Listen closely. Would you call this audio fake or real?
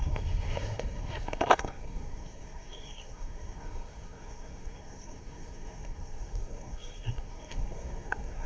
fake